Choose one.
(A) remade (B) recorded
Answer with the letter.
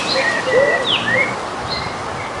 B